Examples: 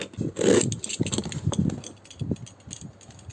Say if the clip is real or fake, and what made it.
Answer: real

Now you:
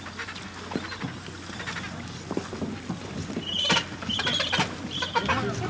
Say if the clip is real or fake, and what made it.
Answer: real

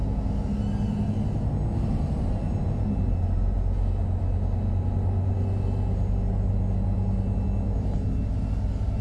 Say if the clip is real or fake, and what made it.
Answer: real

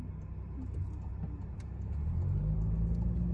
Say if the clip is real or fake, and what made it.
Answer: real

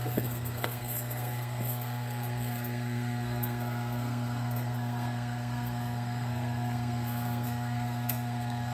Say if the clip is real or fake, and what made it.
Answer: fake, codec, SNAC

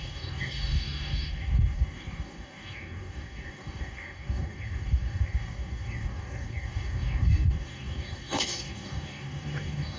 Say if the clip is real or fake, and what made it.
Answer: fake, codec, DAC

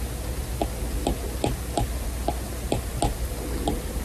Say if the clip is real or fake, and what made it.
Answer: real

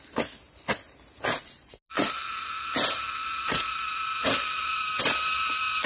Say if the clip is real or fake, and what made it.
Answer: real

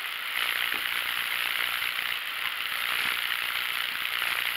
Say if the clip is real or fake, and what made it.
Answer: fake, vocoder, BigVGAN v2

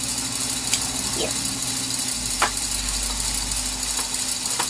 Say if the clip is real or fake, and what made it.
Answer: real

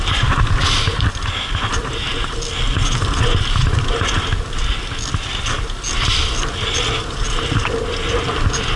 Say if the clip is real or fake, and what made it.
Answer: real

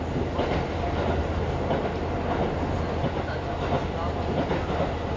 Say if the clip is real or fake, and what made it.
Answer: real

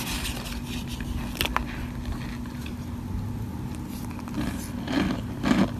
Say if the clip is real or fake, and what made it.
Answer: real